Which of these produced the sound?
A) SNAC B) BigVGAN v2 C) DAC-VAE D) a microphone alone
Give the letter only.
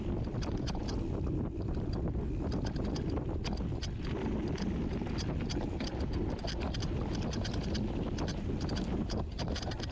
D